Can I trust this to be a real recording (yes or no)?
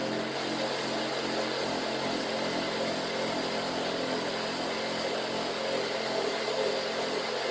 yes